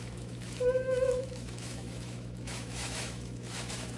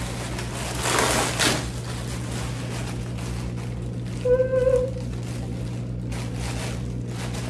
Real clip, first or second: second